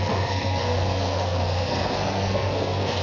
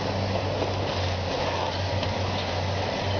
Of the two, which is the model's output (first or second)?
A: first